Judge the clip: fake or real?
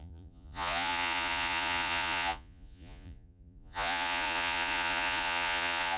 fake